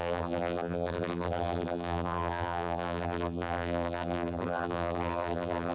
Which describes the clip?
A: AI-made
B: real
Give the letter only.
A